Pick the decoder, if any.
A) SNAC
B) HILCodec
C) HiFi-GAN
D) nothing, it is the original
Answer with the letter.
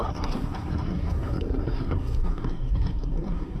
A